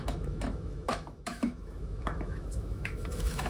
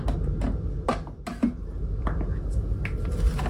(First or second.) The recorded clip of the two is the second